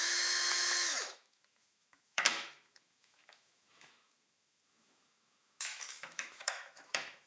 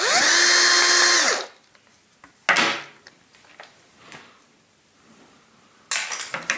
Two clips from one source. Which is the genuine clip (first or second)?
second